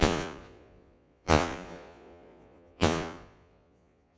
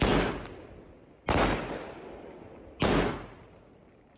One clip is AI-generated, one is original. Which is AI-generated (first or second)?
first